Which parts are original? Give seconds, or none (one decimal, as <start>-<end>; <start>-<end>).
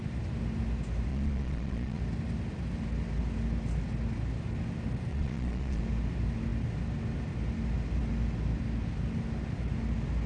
0.0-1.1; 2.0-5.1; 5.8-10.3